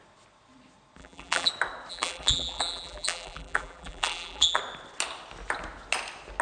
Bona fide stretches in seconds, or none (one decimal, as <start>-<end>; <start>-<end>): 0.0-1.0; 1.5-1.9; 4.6-6.4